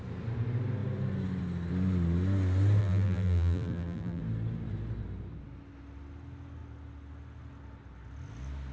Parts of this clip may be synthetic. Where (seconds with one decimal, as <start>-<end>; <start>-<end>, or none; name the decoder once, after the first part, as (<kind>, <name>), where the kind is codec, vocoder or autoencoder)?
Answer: 2.8-4.2 (vocoder, BigVGAN v2)